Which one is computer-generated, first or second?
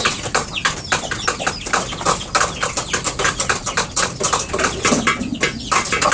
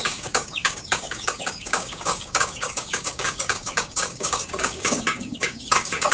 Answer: second